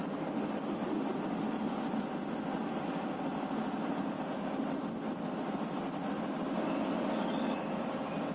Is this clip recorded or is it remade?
recorded